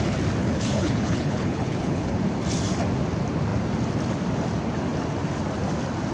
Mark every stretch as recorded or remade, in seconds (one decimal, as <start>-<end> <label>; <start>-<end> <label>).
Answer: 0.0-0.4 recorded; 0.4-2.2 remade; 2.2-6.1 recorded